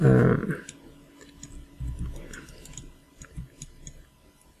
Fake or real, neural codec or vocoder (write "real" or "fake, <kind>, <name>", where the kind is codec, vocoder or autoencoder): real